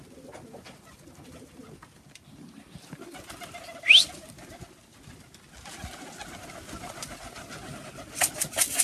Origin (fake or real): real